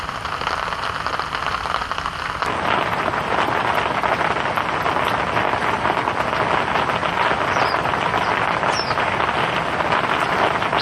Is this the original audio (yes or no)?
yes